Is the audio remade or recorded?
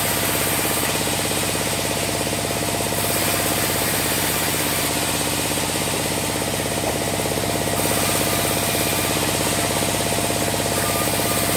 remade